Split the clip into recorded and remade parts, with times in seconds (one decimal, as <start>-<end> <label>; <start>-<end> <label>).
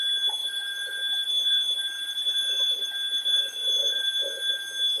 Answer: 0.0-0.4 recorded; 0.4-3.4 remade; 3.4-3.8 recorded; 3.8-4.5 remade; 4.5-5.0 recorded